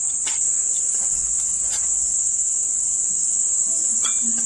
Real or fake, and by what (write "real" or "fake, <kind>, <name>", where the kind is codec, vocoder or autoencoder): real